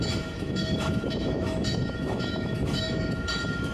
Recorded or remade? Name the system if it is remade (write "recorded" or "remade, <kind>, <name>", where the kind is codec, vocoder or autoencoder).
remade, autoencoder, DAC-VAE